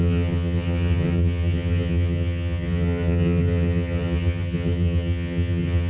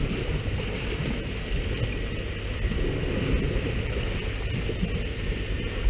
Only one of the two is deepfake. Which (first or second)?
first